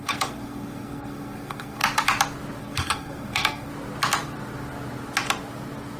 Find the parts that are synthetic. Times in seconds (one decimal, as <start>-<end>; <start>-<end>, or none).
0.0-1.8; 2.6-3.7